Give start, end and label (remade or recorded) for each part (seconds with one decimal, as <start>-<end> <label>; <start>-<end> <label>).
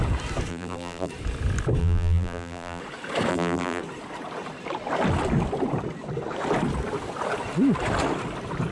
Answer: 0.0-0.5 recorded; 0.5-1.1 remade; 1.1-1.8 recorded; 1.8-2.8 remade; 2.8-3.3 recorded; 3.3-3.8 remade; 3.8-8.7 recorded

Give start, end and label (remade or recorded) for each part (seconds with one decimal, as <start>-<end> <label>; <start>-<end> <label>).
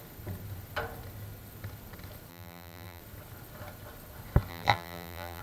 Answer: 0.0-2.3 recorded; 2.3-3.0 remade; 3.0-4.5 recorded; 4.5-5.4 remade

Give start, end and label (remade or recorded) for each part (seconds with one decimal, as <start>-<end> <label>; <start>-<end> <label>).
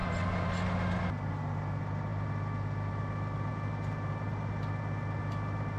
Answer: 0.0-5.8 recorded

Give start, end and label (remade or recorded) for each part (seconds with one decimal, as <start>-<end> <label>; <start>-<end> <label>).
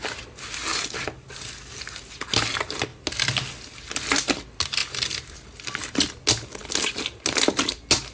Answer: 0.0-8.1 recorded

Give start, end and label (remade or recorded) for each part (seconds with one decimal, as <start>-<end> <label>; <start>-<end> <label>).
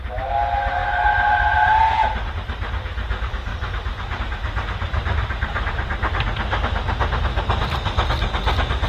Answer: 0.0-3.5 recorded; 3.5-4.2 remade; 4.2-4.8 recorded; 4.8-5.9 remade; 5.9-8.9 recorded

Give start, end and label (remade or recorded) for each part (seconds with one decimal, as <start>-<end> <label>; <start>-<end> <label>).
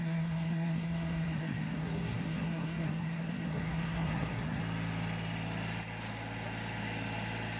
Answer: 0.0-4.6 remade; 4.6-7.6 recorded